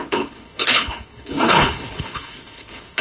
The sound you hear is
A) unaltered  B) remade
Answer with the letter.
B